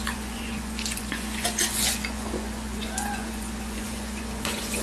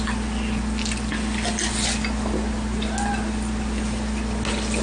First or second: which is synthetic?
first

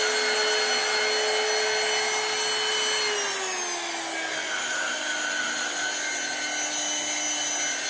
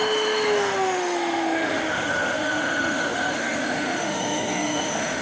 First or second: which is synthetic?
second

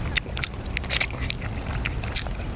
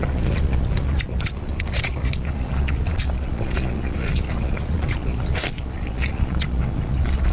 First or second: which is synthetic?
second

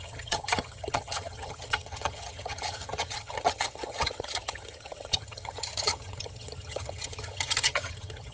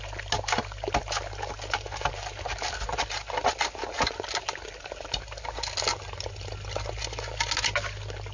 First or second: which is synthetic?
first